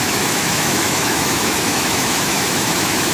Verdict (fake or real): fake